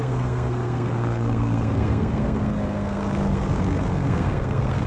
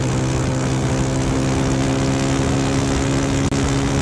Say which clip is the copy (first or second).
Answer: first